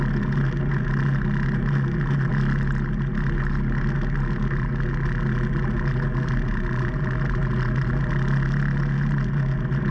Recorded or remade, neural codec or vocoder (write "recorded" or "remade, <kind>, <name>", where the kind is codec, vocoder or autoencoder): recorded